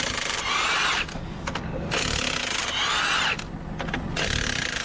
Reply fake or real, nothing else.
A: real